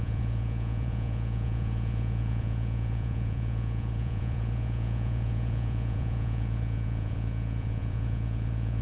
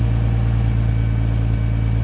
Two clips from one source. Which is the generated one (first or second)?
first